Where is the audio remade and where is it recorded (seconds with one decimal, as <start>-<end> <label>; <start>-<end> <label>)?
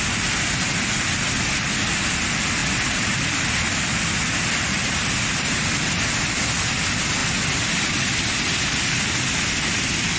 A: 0.0-10.2 recorded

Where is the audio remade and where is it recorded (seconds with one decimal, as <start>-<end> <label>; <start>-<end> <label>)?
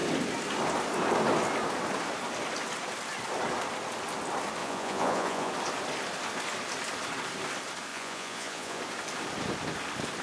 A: 0.0-4.6 recorded; 4.6-5.5 remade; 5.5-7.9 recorded; 7.9-8.8 remade; 8.8-10.2 recorded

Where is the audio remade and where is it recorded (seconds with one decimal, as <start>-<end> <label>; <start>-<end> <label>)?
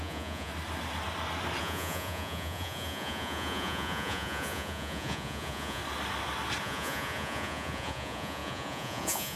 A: 0.0-0.5 remade; 0.5-1.6 recorded; 1.6-5.8 remade; 5.8-6.6 recorded; 6.6-9.4 remade